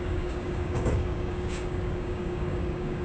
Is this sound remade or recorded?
remade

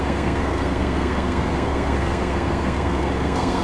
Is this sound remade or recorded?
remade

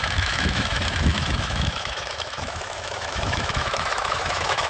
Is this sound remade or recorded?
remade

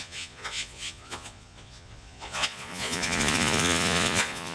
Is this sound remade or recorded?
remade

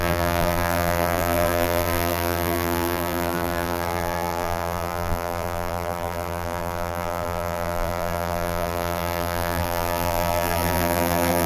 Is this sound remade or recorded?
remade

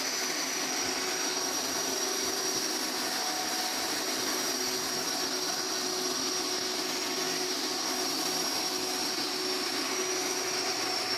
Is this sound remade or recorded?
recorded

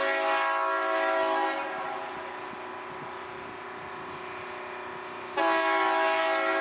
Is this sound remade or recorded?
recorded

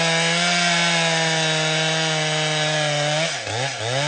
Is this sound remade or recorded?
recorded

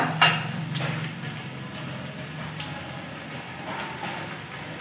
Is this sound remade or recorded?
recorded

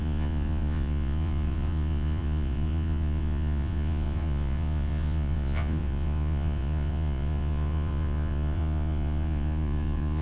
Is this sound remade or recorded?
remade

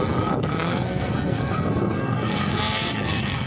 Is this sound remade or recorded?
remade